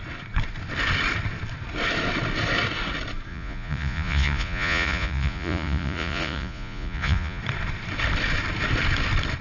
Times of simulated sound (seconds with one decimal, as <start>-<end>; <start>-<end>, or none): 3.3-7.4